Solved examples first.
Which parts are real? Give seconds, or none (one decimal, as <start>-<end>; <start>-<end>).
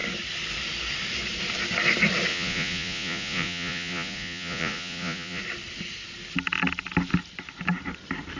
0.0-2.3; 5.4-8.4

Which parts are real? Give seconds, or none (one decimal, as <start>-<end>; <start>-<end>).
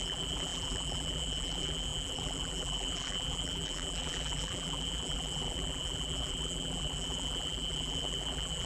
none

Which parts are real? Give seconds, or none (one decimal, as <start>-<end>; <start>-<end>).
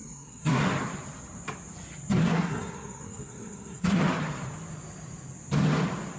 0.6-2.2; 4.0-6.2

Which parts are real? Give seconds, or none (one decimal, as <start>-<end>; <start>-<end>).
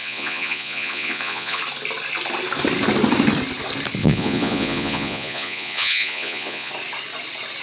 1.6-4.0; 6.7-7.6